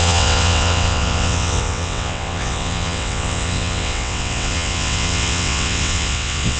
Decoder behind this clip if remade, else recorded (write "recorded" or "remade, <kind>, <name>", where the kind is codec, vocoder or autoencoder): remade, vocoder, WaveNeXt